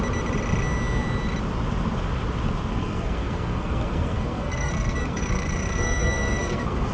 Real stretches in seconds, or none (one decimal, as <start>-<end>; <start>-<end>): 0.0-2.7